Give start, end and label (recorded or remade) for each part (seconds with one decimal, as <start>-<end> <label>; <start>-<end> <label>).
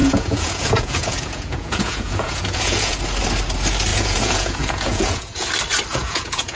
0.0-3.0 remade; 3.0-3.9 recorded; 3.9-5.5 remade; 5.5-5.9 recorded; 5.9-6.6 remade